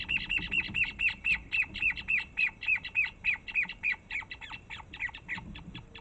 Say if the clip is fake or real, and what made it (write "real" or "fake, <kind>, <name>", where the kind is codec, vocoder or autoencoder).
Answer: fake, vocoder, BigVGAN v2